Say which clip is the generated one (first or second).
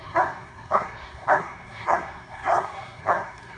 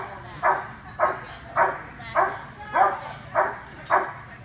first